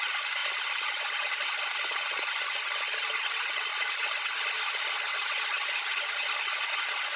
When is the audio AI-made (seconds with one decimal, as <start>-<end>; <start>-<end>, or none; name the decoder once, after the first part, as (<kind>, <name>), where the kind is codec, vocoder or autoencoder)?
none